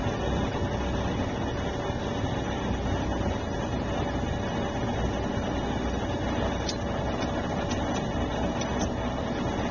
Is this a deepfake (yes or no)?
no